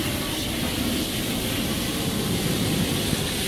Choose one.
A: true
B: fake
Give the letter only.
A